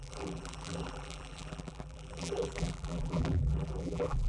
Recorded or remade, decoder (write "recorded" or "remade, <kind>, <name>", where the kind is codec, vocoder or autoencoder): remade, vocoder, BigVGAN v2